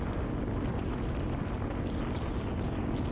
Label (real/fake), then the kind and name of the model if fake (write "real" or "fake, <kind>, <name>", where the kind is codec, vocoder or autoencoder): real